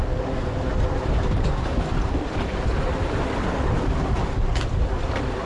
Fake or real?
real